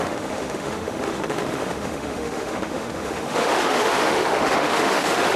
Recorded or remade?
remade